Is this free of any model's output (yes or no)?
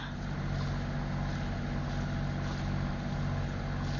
yes